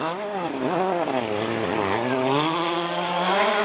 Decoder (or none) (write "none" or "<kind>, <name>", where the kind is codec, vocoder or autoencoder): none